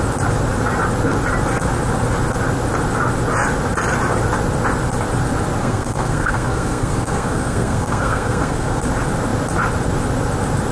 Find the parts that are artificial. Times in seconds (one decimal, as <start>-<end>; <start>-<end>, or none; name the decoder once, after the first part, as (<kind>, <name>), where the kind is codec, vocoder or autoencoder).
5.6-8.8 (codec, SNAC)